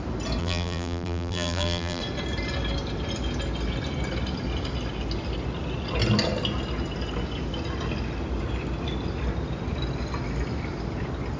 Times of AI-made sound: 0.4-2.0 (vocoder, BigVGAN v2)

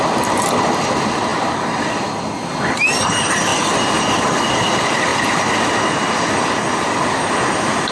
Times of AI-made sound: none

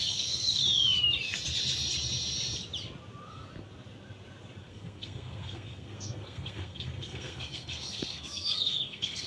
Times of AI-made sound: 0.0-0.6 (codec, SNAC); 4.6-9.3

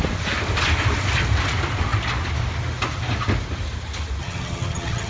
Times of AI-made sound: 4.2-5.1 (vocoder, HiFi-GAN)

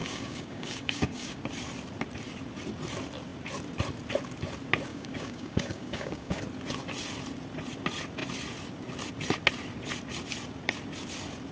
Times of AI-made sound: 0.0-1.4 (codec, DAC); 4.9-6.4

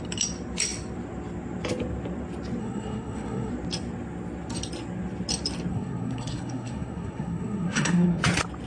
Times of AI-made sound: 2.6-3.5 (codec, SNAC); 5.7-8.2

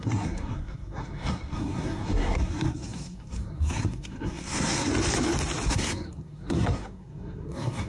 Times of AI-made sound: 0.0-4.9 (codec, SNAC); 5.7-7.9